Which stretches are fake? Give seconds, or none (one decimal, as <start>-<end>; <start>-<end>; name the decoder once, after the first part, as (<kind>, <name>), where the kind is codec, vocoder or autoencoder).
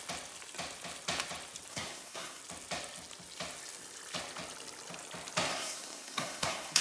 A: 1.7-2.4 (codec, SNAC); 5.5-6.8